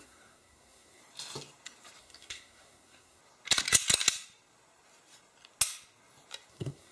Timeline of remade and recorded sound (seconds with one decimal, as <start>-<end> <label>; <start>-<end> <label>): 0.0-1.0 remade; 1.0-2.0 recorded; 2.0-3.2 remade; 3.2-6.5 recorded; 6.5-6.9 remade